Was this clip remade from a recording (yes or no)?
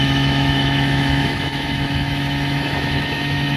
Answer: yes